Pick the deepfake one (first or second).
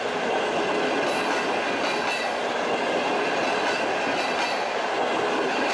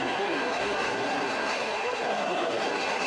second